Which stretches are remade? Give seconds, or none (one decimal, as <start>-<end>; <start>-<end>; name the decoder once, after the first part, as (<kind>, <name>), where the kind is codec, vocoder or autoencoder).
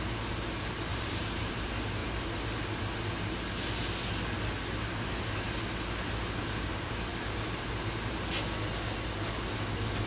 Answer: 0.9-1.5 (vocoder, BigVGAN v2)